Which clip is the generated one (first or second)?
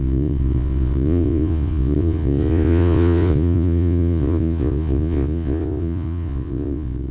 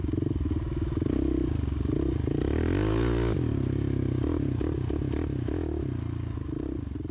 first